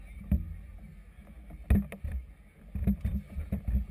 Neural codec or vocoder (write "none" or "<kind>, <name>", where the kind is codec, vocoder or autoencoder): none